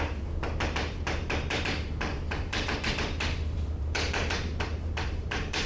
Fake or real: fake